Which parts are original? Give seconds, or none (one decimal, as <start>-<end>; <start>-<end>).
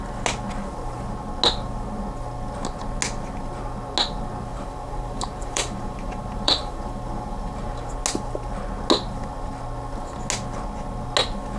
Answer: 0.0-4.5; 7.9-11.6